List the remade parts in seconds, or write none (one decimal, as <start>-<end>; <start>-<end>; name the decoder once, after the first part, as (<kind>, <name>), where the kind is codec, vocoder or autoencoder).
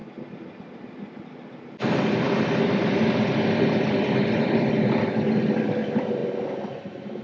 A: 0.0-6.2 (vocoder, BigVGAN v2)